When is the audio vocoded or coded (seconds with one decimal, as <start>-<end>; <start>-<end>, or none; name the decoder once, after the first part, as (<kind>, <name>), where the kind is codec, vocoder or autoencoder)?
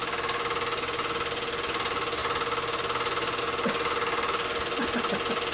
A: none